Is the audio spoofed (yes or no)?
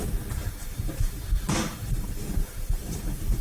yes